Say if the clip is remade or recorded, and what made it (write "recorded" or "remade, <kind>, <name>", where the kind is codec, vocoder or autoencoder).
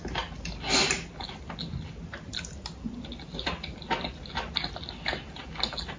recorded